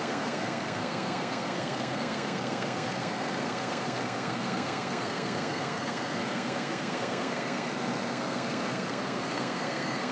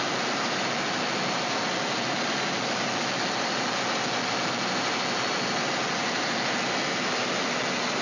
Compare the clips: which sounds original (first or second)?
second